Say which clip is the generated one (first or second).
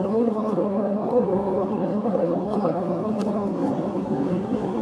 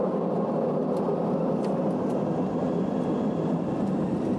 first